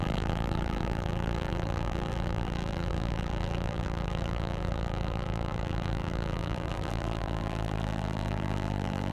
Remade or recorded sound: remade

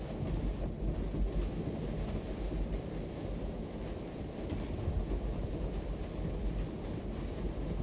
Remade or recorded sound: recorded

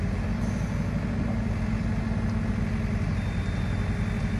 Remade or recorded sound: recorded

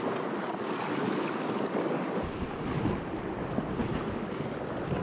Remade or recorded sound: recorded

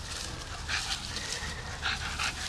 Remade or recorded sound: recorded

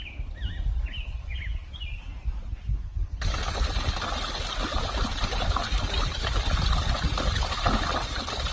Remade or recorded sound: recorded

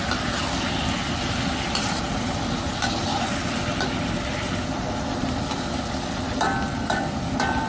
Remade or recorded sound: recorded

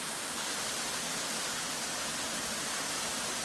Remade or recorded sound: recorded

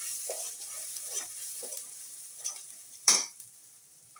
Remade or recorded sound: remade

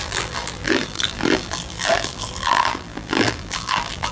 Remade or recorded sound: remade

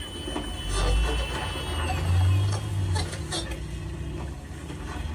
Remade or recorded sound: recorded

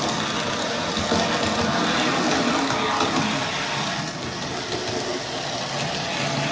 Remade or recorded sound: recorded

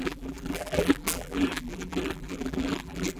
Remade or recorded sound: remade